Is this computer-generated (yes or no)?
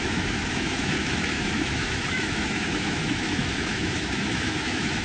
yes